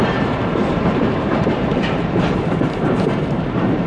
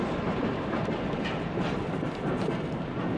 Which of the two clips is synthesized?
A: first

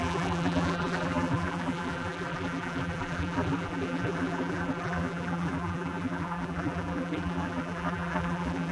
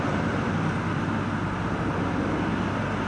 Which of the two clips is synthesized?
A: first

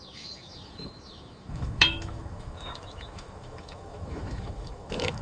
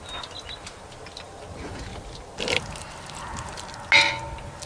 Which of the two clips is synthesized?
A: first